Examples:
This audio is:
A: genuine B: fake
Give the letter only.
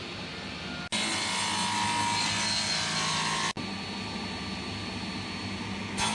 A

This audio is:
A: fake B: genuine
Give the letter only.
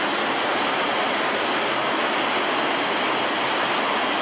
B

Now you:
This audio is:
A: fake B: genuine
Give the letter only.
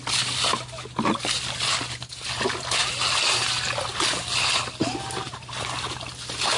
B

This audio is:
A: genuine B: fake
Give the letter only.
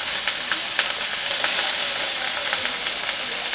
A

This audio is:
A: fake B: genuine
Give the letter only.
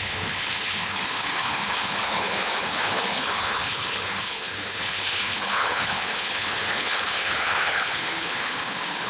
A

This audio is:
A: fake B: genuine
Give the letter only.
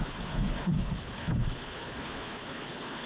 A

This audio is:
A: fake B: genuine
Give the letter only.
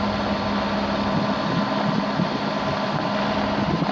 B